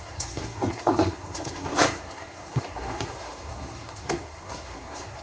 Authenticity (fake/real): fake